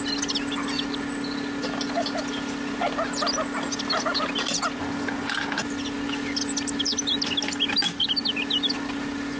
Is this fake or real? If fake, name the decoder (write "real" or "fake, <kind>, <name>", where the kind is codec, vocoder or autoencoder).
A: real